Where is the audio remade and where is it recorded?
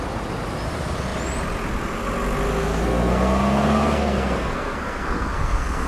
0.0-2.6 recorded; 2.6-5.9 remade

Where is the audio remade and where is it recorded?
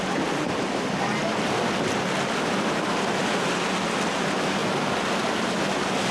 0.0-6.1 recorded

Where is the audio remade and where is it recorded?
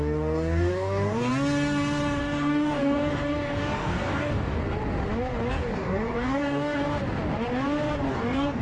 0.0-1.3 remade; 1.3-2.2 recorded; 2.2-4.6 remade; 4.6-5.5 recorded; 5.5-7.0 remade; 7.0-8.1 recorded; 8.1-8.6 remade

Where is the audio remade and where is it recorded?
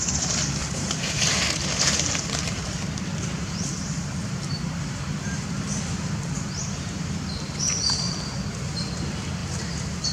0.0-0.6 recorded; 0.6-5.8 remade; 5.8-6.6 recorded; 6.6-7.1 remade; 7.1-9.4 recorded; 9.4-10.1 remade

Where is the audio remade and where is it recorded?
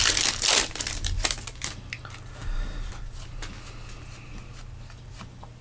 0.0-5.6 recorded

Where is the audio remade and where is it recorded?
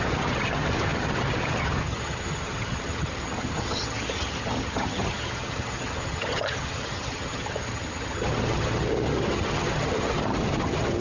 0.0-11.0 remade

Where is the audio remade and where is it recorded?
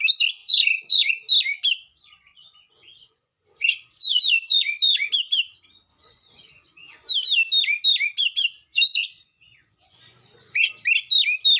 0.0-0.4 recorded; 0.4-1.1 remade; 1.1-1.9 recorded; 1.9-5.1 remade; 5.1-5.9 recorded; 5.9-7.1 remade; 7.1-8.7 recorded; 8.7-10.7 remade; 10.7-11.6 recorded